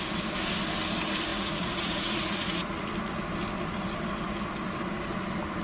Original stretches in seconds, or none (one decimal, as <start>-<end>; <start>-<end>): 0.0-1.3; 2.9-5.6